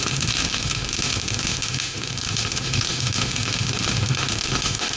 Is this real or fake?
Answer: fake